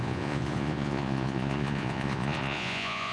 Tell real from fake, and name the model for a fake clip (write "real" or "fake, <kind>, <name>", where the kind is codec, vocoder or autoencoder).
fake, vocoder, Vocos